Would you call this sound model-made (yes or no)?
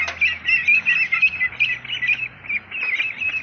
no